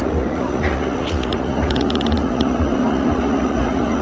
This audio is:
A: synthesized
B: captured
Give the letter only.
A